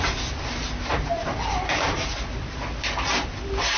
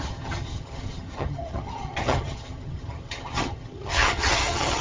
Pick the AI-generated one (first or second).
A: second